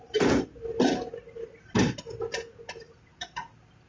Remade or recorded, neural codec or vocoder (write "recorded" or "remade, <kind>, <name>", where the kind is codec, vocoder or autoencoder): recorded